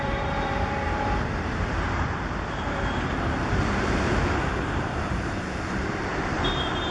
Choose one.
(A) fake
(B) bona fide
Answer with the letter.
A